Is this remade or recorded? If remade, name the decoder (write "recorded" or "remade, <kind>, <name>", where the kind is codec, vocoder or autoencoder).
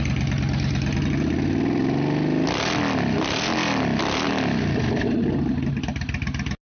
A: recorded